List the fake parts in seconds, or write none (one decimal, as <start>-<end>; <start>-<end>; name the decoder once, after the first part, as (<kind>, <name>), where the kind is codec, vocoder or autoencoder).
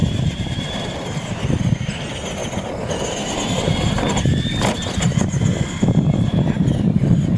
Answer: 0.0-1.4 (vocoder, BigVGAN v2)